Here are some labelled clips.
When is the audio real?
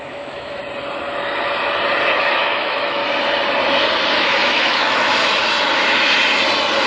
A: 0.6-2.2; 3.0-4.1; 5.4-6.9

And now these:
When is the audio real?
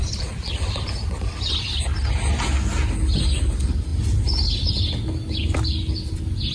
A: 1.8-6.5